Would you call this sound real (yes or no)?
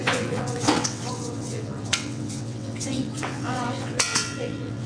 no